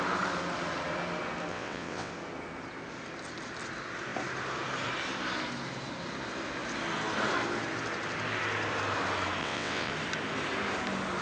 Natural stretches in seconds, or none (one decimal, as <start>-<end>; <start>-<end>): 0.0-1.5; 2.1-9.4; 9.9-11.2